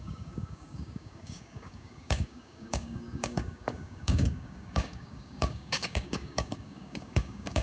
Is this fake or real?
fake